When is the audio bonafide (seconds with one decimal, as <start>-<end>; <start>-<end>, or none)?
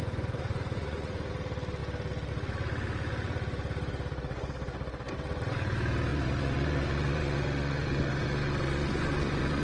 1.3-6.1